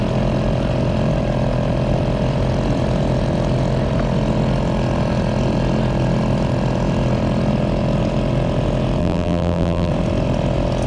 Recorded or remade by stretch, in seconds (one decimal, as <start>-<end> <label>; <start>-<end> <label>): 0.0-9.0 recorded; 9.0-9.9 remade; 9.9-10.9 recorded